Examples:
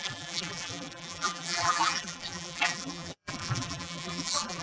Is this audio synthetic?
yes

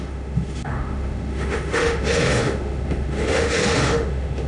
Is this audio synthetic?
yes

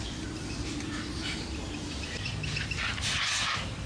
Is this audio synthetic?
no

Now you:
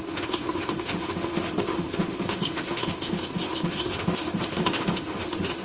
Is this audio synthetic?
yes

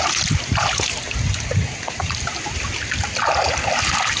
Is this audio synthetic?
no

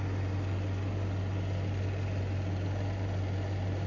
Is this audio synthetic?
no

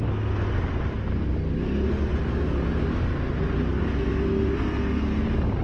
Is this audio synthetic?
no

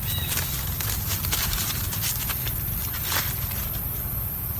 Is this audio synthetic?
no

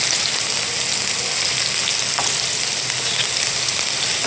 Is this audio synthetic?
no